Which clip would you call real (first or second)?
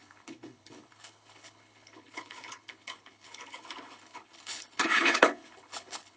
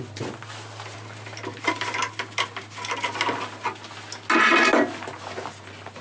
second